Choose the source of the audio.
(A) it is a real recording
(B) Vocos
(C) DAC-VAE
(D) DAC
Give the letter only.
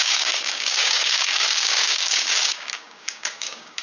D